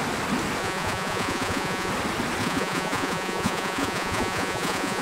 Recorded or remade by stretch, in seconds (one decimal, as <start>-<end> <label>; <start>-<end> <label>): 0.0-0.6 recorded; 0.6-1.9 remade; 1.9-2.4 recorded; 2.4-5.0 remade